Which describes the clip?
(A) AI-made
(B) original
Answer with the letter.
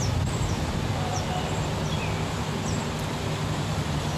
B